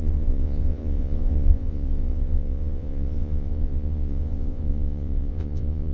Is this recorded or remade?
remade